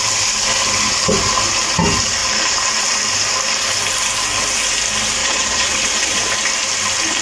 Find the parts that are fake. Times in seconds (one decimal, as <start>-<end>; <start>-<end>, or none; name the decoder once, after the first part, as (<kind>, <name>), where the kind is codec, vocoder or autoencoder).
5.2-6.2 (vocoder, Vocos)